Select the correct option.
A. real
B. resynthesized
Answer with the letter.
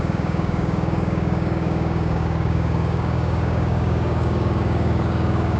B